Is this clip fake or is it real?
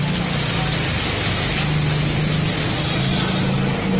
real